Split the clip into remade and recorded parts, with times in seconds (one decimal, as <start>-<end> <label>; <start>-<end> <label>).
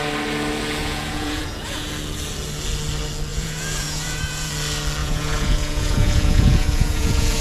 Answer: 0.0-0.8 recorded; 0.8-1.9 remade; 1.9-3.3 recorded; 3.3-4.5 remade; 4.5-5.0 recorded; 5.0-7.4 remade